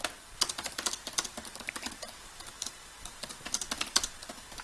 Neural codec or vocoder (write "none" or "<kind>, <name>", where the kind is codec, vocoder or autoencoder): none